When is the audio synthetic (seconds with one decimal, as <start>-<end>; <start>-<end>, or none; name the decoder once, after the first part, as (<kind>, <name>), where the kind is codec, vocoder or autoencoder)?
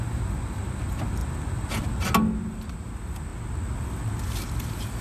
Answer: none